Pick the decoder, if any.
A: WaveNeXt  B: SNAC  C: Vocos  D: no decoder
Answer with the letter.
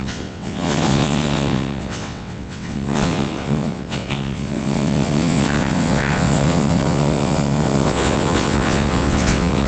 A